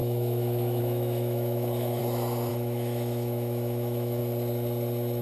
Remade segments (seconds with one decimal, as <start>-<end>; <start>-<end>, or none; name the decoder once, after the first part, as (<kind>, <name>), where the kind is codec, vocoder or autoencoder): 0.0-2.0 (autoencoder, DAC-VAE); 2.5-4.2